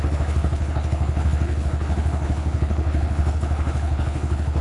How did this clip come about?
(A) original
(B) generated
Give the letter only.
B